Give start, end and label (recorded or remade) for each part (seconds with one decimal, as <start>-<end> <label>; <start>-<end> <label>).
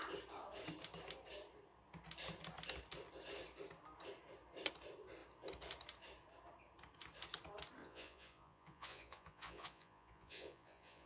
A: 0.0-7.8 recorded; 7.8-11.1 remade